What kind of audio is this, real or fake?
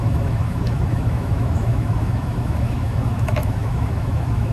fake